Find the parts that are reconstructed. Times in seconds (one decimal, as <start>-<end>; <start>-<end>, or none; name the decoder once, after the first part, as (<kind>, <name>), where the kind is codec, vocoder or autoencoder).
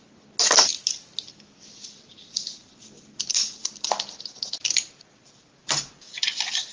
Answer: none